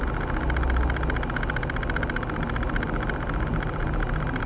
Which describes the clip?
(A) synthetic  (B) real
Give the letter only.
B